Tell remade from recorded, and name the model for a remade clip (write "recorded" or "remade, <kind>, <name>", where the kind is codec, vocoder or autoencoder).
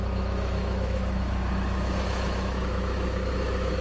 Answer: remade, autoencoder, DAC-VAE